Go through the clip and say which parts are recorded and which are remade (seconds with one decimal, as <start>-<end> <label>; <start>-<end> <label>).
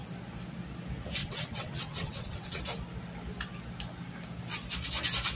0.0-1.2 recorded; 1.2-2.6 remade; 2.6-5.3 recorded